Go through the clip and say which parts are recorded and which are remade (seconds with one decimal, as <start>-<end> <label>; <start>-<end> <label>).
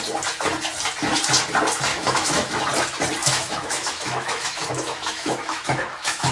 0.0-1.9 recorded; 1.9-2.6 remade; 2.6-3.2 recorded; 3.2-6.3 remade